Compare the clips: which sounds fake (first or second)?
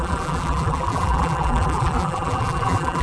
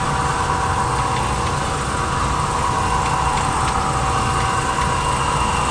first